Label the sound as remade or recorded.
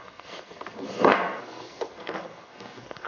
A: remade